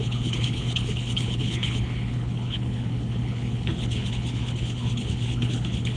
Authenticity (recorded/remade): remade